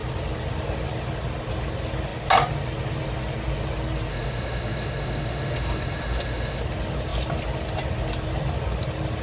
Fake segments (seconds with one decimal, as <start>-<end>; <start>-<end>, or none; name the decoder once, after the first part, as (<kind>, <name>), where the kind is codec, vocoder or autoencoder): 4.1-6.6 (autoencoder, DAC-VAE)